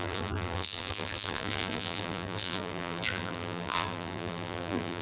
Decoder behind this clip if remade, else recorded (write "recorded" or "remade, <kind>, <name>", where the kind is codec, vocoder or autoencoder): remade, vocoder, BigVGAN v2